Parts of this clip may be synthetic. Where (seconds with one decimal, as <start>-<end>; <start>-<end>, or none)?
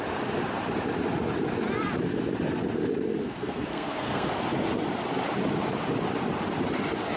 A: 3.2-4.3